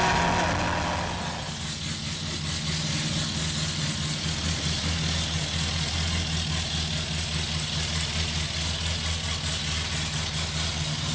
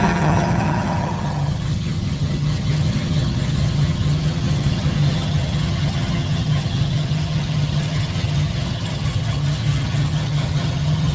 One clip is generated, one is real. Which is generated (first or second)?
second